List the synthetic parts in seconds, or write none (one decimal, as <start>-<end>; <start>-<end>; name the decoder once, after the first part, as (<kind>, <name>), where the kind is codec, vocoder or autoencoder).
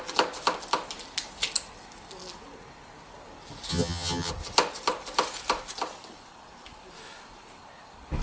3.7-4.3 (vocoder, HiFi-GAN)